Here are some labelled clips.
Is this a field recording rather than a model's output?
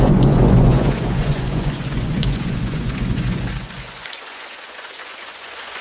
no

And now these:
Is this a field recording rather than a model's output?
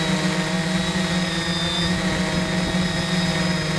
yes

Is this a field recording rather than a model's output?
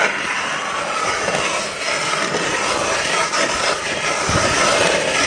yes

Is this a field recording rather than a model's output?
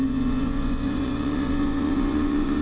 no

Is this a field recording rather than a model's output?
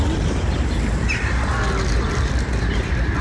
yes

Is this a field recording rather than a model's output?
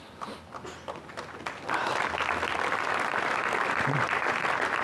yes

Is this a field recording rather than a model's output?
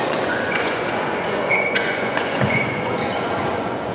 no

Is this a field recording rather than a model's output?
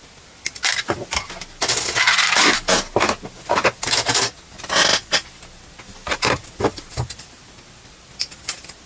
yes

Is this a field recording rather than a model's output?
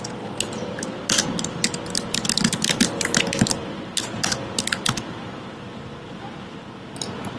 yes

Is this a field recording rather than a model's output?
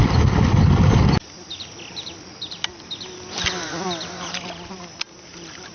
yes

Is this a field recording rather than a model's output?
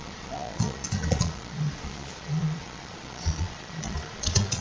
no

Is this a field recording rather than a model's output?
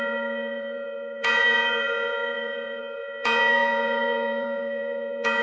no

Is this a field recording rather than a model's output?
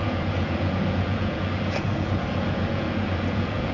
no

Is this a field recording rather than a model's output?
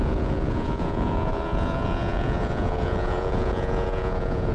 no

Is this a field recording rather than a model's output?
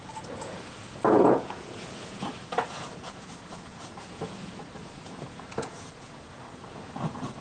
no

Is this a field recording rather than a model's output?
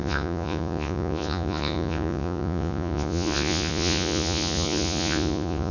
no